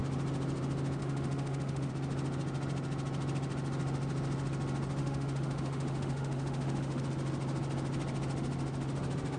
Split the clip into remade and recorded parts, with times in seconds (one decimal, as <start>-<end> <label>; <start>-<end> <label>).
0.0-1.0 recorded; 1.0-1.9 remade; 1.9-5.0 recorded; 5.0-7.0 remade; 7.0-9.4 recorded